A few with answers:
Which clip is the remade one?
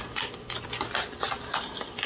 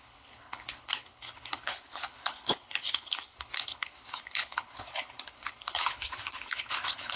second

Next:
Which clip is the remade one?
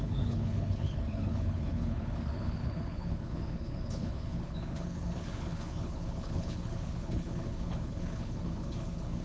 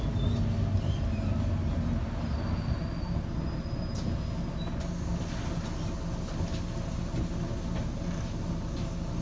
first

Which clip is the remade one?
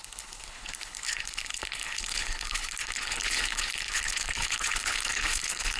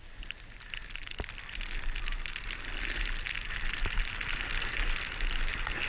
first